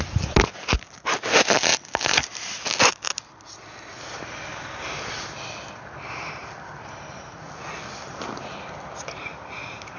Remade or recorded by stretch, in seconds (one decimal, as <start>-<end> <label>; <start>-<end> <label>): 0.0-10.0 recorded